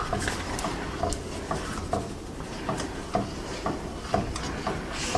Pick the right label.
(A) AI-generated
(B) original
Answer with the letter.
B